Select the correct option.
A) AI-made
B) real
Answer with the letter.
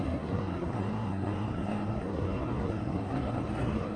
A